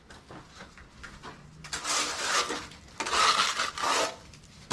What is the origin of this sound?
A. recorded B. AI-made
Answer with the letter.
A